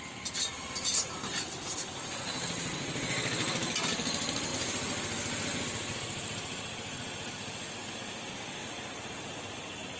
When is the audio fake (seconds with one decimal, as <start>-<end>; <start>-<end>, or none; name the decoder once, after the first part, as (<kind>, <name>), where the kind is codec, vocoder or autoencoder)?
none